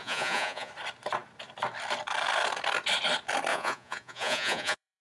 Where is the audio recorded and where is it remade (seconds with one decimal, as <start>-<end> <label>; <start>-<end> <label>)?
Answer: 0.0-0.7 remade; 0.7-3.5 recorded; 3.5-5.0 remade